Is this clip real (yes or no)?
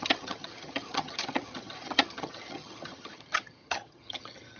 no